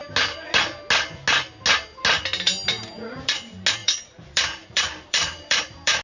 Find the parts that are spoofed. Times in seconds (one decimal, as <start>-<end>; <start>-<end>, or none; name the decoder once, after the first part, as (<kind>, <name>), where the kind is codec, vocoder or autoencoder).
2.7-3.3 (vocoder, BigVGAN v2); 3.8-6.0